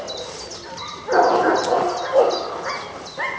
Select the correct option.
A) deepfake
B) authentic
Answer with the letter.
B